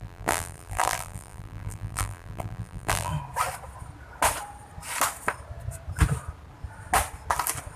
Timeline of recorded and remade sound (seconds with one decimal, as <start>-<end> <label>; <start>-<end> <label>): 0.0-3.1 remade; 3.1-7.8 recorded